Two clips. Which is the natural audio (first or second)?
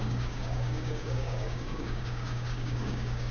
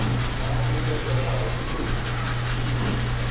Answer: second